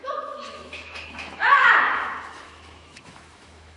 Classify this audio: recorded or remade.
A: remade